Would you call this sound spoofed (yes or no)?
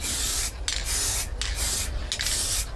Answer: no